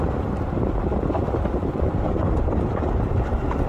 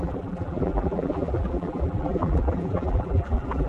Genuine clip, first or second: first